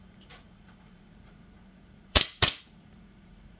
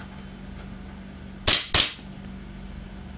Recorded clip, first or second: second